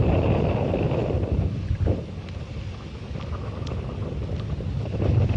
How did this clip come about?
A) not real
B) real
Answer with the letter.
B